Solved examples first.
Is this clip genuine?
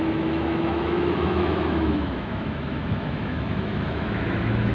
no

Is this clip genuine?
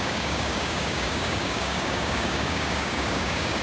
no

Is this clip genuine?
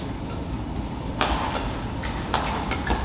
yes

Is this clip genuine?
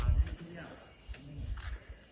yes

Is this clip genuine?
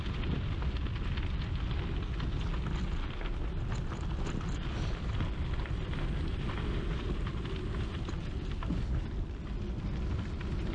yes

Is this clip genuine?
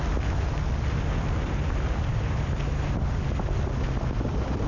yes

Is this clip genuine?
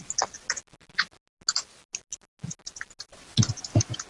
yes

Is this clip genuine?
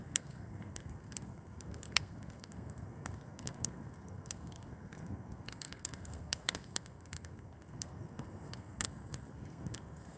no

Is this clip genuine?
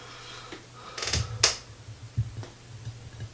yes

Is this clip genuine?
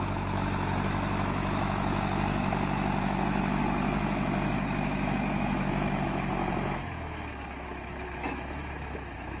no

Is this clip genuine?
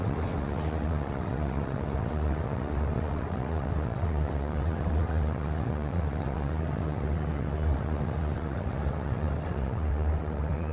no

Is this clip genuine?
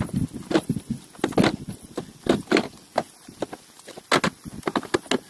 yes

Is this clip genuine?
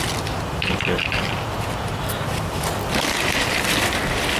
yes